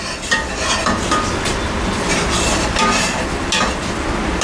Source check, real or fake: fake